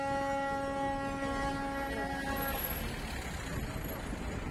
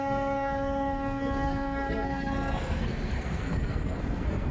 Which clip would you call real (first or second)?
first